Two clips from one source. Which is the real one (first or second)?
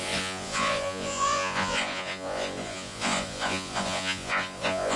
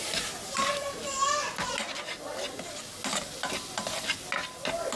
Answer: second